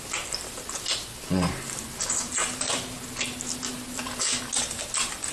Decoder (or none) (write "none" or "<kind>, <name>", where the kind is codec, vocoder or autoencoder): none